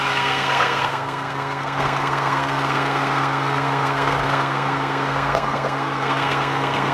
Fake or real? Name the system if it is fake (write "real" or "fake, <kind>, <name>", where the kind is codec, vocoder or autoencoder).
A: fake, codec, SNAC